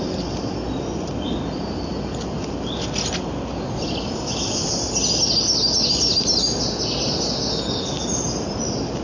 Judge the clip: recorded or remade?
recorded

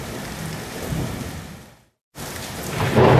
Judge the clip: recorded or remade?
recorded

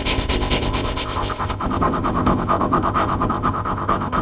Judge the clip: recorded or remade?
remade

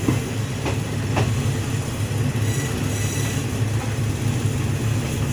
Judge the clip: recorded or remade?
recorded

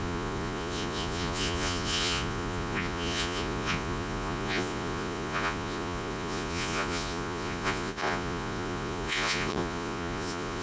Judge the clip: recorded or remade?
remade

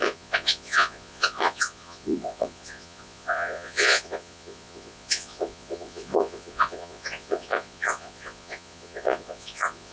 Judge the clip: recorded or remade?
remade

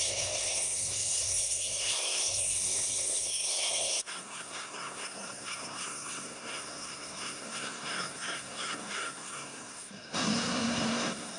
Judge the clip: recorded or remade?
remade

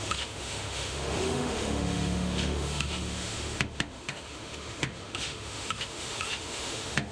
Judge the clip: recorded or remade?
remade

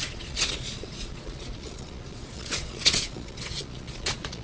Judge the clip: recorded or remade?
remade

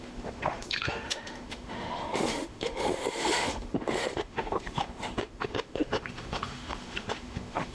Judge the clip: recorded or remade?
remade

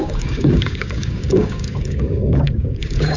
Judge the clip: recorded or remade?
remade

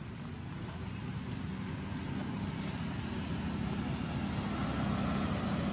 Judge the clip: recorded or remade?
recorded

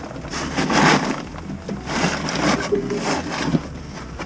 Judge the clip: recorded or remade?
recorded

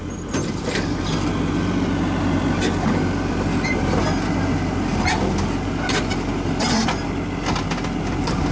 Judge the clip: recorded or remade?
recorded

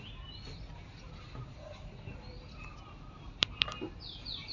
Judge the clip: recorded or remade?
recorded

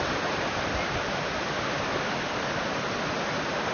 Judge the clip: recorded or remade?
recorded